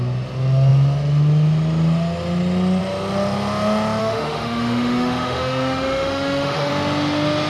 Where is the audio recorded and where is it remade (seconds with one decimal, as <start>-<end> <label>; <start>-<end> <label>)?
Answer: 0.0-4.0 recorded; 4.0-6.7 remade; 6.7-7.5 recorded

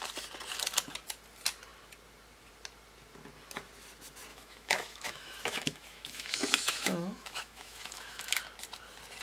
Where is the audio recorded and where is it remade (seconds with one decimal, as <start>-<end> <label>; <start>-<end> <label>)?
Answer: 0.0-4.3 recorded; 4.3-8.4 remade; 8.4-9.2 recorded

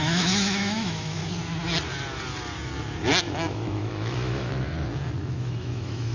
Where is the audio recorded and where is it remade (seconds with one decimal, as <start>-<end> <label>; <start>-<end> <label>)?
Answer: 0.0-1.2 remade; 1.2-3.2 recorded; 3.2-4.5 remade; 4.5-5.2 recorded; 5.2-6.1 remade

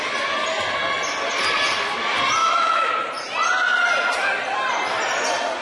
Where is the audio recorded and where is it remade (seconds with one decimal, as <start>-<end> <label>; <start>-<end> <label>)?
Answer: 0.0-2.4 recorded; 2.4-2.9 remade; 2.9-5.6 recorded